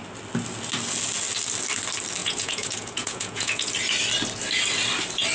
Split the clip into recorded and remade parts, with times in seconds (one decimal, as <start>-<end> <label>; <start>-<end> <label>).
0.0-2.2 recorded; 2.2-3.7 remade; 3.7-5.3 recorded